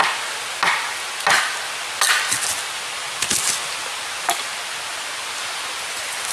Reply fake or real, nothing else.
real